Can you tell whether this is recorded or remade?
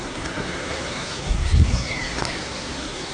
remade